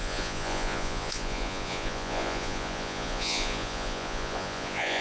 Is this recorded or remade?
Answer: remade